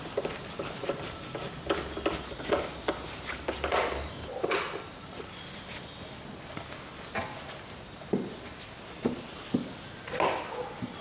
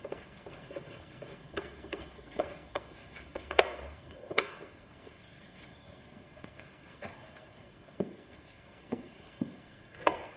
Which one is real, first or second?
first